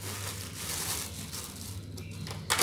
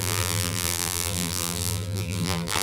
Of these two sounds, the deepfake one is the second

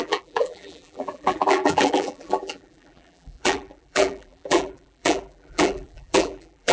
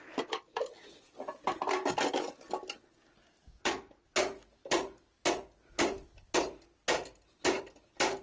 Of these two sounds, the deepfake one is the first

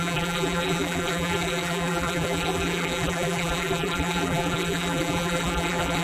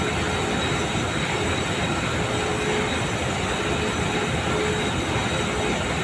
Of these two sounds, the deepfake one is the first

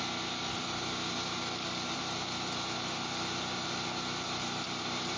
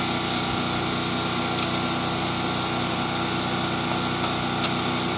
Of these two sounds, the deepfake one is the first